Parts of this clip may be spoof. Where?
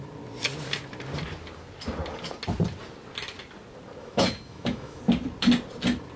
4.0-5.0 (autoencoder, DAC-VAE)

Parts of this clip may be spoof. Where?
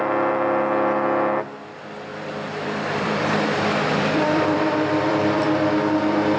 2.1-5.9 (vocoder, BigVGAN v2)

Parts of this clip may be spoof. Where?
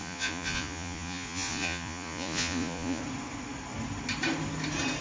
0.0-3.0 (vocoder, Vocos)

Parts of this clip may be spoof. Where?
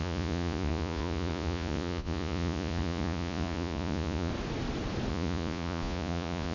0.0-4.3 (vocoder, Vocos); 5.1-6.5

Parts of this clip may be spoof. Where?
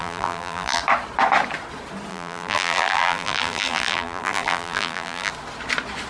0.0-0.8 (vocoder, BigVGAN v2); 2.1-5.3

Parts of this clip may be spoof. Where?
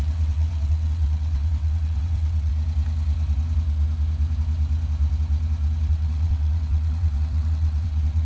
0.0-2.5 (vocoder, WaveNeXt); 5.9-8.2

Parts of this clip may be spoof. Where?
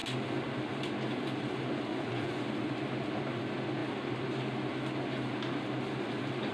1.9-2.4 (vocoder, Vocos)